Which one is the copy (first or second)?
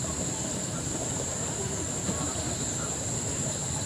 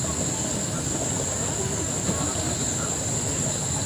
first